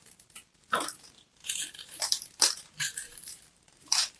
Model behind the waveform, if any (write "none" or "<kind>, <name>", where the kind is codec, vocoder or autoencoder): vocoder, BigVGAN v2